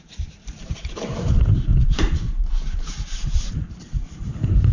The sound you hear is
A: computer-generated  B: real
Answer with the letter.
A